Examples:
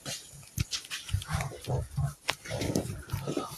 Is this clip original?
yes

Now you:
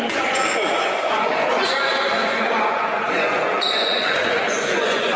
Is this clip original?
no